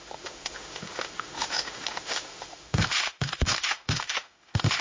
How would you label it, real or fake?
fake